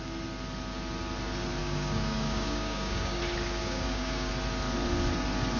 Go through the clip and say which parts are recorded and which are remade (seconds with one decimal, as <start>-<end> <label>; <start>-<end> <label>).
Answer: 0.0-1.6 recorded; 1.6-3.2 remade; 3.2-3.6 recorded; 3.6-4.3 remade; 4.3-5.6 recorded